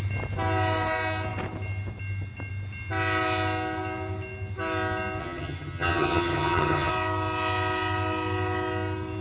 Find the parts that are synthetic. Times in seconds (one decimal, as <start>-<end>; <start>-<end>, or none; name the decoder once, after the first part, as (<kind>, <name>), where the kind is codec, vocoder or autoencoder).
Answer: 5.2-6.9 (vocoder, HiFi-GAN)